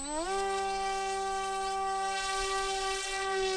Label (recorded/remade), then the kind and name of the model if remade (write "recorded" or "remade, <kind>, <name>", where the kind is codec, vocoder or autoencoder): recorded